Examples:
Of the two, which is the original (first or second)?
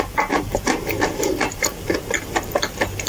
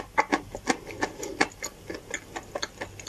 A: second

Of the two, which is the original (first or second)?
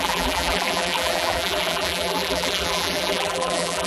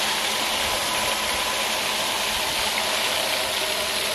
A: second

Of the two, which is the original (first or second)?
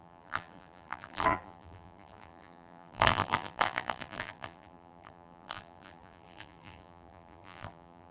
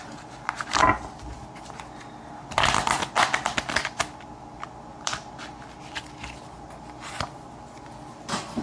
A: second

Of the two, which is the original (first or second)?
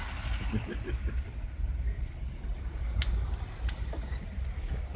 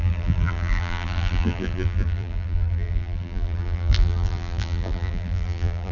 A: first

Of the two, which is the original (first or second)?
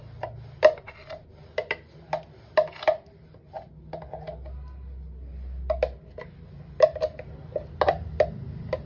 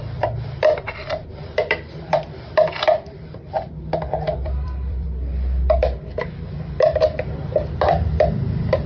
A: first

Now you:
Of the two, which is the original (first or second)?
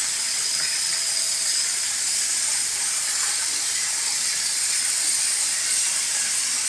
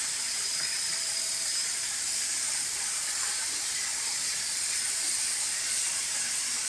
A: first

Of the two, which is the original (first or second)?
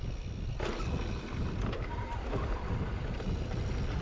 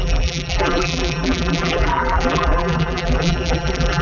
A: first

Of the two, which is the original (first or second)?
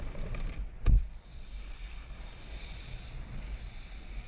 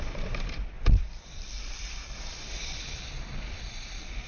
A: first